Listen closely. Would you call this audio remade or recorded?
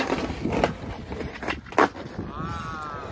recorded